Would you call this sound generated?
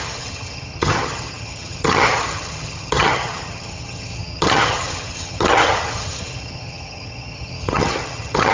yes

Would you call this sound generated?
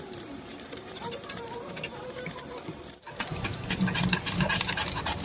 yes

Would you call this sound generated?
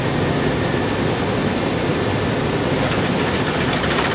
no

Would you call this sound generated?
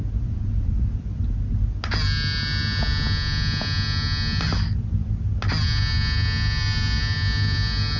no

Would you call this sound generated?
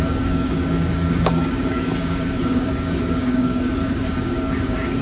yes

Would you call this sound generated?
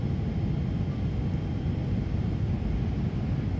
no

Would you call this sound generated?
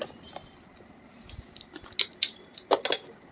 no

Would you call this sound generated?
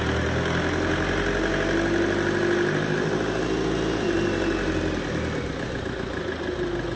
no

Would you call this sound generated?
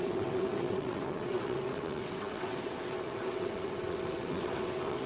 yes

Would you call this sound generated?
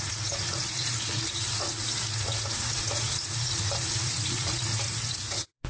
yes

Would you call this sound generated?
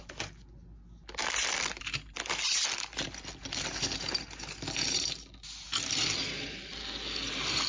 no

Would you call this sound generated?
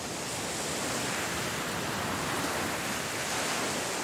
no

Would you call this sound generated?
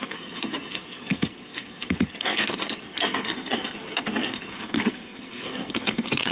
yes